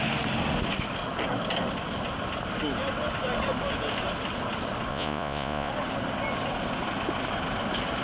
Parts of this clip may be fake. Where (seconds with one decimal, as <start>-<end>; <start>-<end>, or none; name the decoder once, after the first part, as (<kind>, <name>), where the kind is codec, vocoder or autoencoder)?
4.9-5.7 (vocoder, Vocos)

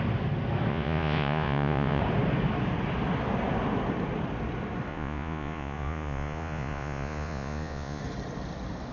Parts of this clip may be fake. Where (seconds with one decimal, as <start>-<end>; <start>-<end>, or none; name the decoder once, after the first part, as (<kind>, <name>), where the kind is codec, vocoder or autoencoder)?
0.7-2.0 (vocoder, Vocos); 4.9-8.0

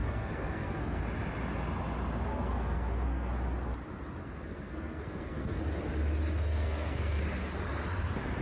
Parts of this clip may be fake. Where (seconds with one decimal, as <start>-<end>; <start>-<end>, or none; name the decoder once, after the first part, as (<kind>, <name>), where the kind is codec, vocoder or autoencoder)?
0.0-1.0 (codec, SNAC); 2.3-3.3; 4.2-5.6; 6.5-7.2

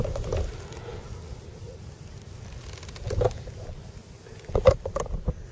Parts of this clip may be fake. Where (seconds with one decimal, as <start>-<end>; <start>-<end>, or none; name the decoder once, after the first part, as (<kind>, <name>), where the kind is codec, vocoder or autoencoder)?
none